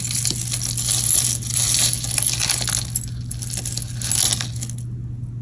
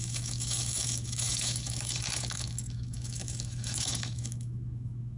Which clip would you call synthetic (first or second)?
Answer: second